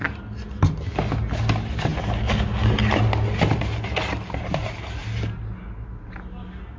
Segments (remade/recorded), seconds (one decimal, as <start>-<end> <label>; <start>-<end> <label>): 0.0-6.8 recorded